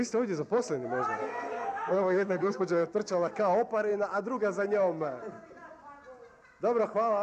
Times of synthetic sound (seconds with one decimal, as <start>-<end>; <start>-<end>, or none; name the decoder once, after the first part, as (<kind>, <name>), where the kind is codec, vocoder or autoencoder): 1.2-2.6 (codec, SNAC)